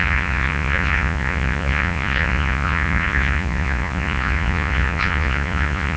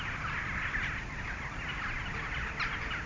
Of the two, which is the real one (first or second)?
second